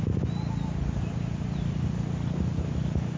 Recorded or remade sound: recorded